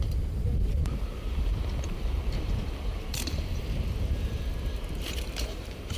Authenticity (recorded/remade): remade